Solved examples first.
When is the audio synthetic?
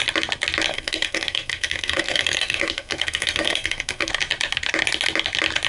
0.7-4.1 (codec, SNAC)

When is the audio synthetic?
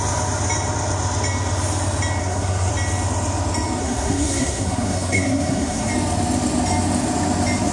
2.2-2.7 (codec, SNAC); 3.8-5.9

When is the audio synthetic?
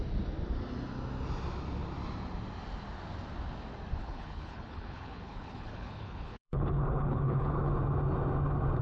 4.0-7.7 (codec, HILCodec)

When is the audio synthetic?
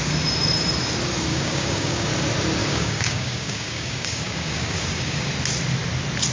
1.3-2.1 (codec, DAC); 2.6-5.3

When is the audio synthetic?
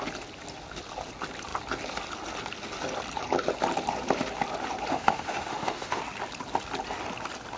4.9-6.0 (autoencoder, DAC-VAE)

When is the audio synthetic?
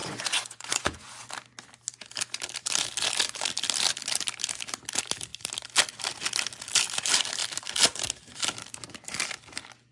0.0-1.3 (vocoder, Vocos)